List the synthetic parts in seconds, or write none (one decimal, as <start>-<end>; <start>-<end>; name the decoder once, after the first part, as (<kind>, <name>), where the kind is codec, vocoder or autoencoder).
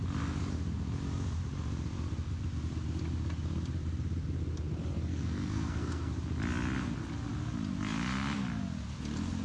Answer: 5.1-6.1 (codec, SNAC)